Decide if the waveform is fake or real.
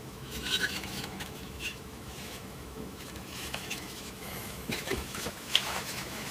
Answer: fake